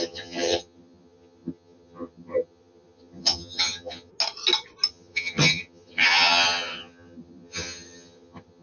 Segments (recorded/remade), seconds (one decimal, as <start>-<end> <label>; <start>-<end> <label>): 0.0-4.1 remade; 4.1-4.9 recorded; 4.9-8.6 remade